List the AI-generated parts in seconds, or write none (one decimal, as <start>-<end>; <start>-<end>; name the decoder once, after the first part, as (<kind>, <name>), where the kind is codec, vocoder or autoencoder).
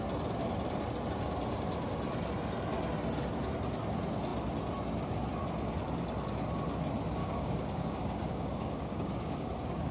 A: 7.2-9.9 (codec, DAC)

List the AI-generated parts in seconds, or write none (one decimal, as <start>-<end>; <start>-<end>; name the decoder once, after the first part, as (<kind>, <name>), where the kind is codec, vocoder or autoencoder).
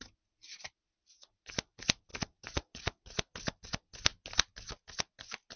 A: none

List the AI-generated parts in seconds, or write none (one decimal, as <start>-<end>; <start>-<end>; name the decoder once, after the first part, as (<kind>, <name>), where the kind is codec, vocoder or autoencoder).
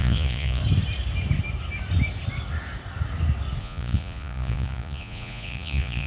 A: 0.0-0.6 (vocoder, Vocos); 3.6-6.1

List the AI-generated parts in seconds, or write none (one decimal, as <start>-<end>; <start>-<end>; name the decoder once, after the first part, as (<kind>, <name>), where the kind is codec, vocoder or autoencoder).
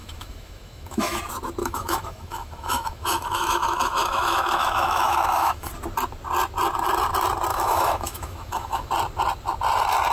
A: 0.0-1.2 (autoencoder, DAC-VAE); 1.6-5.7; 7.5-8.9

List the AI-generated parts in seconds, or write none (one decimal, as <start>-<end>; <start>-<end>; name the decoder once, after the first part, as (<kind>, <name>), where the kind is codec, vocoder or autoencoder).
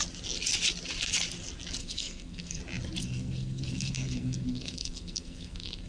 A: 1.8-2.6 (codec, SNAC); 3.0-5.9